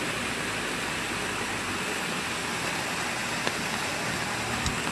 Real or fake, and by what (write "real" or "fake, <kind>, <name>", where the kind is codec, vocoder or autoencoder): real